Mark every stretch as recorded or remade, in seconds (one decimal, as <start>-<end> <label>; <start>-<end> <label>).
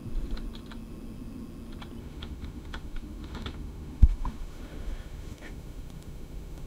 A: 0.0-2.0 recorded; 2.0-6.7 remade